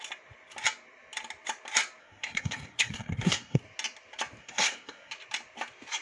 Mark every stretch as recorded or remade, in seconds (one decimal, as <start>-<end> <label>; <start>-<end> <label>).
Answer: 0.0-2.0 recorded; 2.0-3.6 remade; 3.6-4.4 recorded; 4.4-5.1 remade; 5.1-6.0 recorded